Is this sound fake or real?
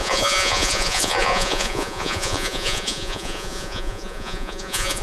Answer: fake